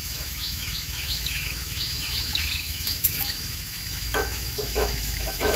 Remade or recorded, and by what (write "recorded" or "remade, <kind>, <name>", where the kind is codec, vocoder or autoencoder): remade, autoencoder, DAC-VAE